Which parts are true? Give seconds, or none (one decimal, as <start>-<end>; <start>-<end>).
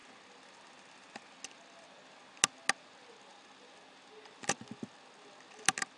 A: 0.0-6.0